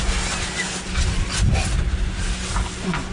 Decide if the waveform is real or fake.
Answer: real